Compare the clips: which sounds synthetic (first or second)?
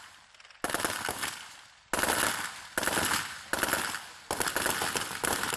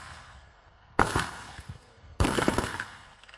second